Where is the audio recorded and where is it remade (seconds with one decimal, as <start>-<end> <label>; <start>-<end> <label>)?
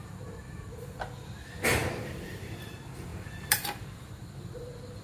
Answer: 0.0-5.0 remade